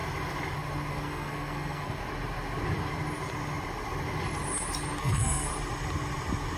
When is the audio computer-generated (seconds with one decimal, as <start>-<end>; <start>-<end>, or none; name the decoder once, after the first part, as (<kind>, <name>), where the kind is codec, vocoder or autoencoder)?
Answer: 0.9-2.0 (codec, SNAC); 5.0-5.5